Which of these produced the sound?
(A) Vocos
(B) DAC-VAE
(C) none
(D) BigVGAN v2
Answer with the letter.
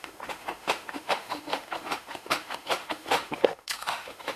B